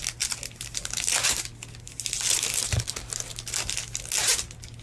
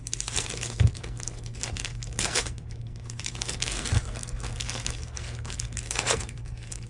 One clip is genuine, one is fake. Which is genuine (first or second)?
first